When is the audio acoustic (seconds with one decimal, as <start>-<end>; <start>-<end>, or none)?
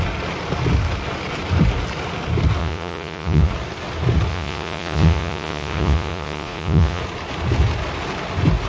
0.0-2.6; 3.5-4.3; 7.0-8.7